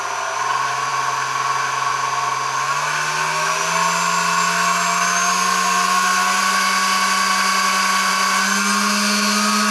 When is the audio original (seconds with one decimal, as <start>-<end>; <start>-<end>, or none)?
0.0-9.7